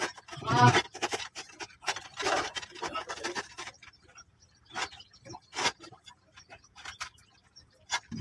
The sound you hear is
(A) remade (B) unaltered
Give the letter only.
A